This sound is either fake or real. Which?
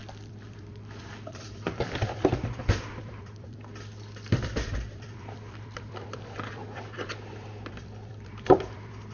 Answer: fake